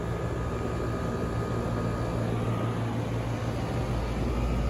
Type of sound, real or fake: real